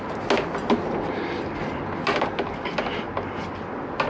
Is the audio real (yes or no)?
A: yes